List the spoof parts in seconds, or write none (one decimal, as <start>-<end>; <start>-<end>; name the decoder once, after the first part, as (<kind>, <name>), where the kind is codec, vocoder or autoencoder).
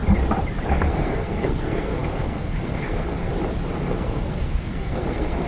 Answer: 0.7-3.3 (codec, SNAC); 3.8-5.5